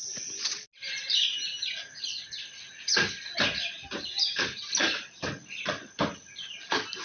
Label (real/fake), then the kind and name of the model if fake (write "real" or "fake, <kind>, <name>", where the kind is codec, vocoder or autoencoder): real